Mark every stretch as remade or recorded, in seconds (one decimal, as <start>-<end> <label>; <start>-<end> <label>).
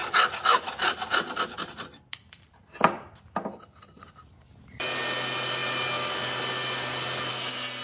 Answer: 0.0-7.8 recorded